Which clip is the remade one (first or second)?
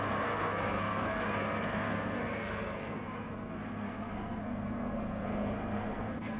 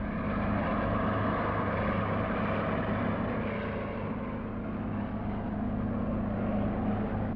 first